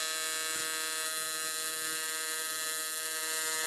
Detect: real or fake real